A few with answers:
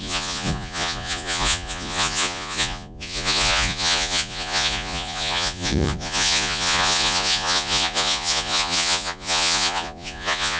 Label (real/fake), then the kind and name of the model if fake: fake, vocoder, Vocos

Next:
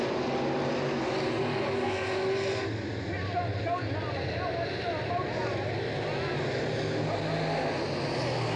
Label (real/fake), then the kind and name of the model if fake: real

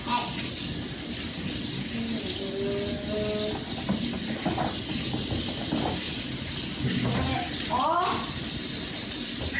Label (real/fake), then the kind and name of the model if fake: real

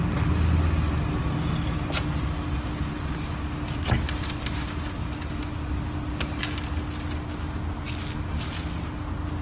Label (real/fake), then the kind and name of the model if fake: real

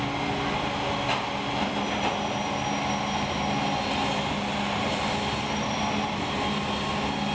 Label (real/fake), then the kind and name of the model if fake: real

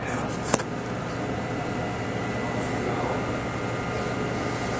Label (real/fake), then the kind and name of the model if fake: real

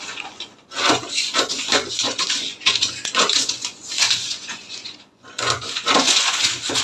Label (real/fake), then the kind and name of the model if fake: fake, vocoder, Vocos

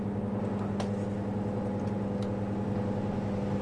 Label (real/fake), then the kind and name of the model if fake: real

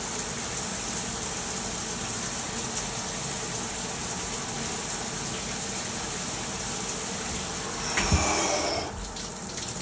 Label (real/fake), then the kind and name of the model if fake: real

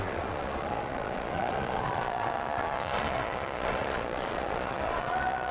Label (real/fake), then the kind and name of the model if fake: fake, vocoder, Vocos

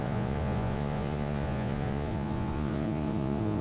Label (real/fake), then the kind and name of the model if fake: fake, vocoder, Vocos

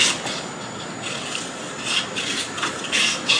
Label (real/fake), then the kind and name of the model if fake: real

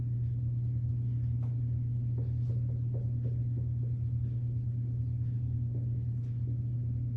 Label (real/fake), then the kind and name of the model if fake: real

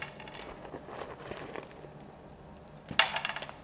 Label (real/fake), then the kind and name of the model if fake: real